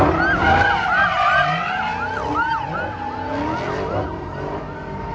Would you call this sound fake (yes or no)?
no